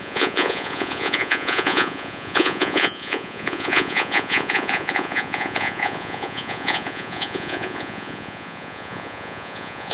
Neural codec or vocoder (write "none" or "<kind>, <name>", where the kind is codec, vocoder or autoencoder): vocoder, Vocos